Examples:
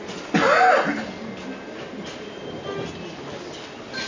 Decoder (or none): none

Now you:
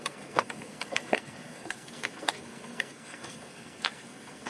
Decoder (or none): codec, SNAC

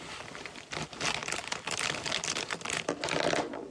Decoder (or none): none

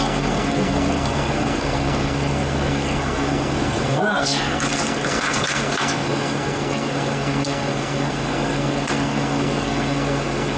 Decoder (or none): codec, SNAC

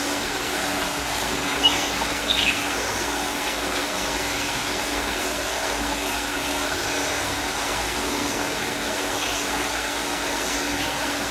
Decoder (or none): codec, SNAC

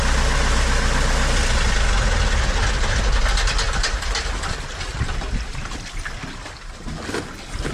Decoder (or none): none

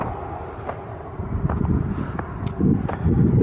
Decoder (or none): none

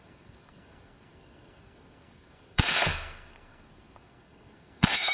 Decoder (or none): codec, SNAC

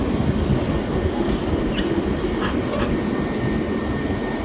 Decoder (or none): none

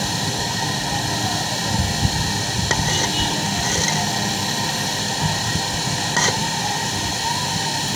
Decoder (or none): none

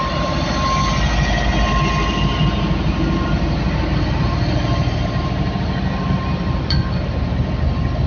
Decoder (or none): none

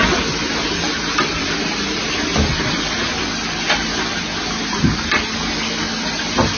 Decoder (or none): none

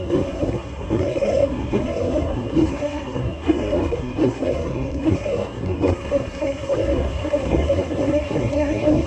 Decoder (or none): codec, SNAC